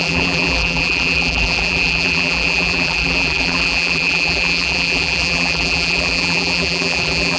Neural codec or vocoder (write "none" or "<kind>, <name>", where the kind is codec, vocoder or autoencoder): vocoder, BigVGAN v2